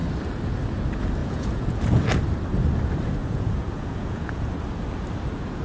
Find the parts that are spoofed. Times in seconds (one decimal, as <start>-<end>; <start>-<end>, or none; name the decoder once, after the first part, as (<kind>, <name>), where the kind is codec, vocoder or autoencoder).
1.2-2.0 (vocoder, Vocos); 3.2-4.5